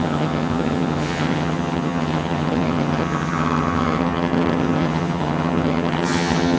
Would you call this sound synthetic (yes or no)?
yes